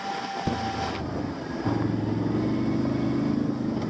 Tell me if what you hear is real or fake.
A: real